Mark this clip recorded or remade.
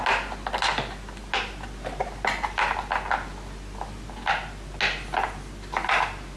recorded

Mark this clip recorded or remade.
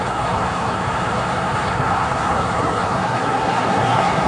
remade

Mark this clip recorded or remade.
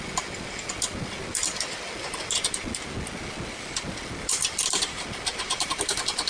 recorded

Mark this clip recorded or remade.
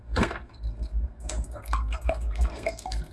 remade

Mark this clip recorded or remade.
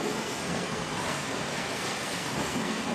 remade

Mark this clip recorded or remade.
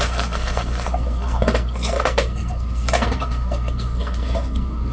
remade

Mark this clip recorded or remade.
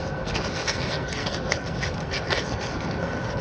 remade